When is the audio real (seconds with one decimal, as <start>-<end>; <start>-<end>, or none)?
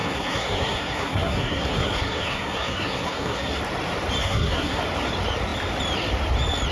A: 3.6-4.2; 4.8-6.7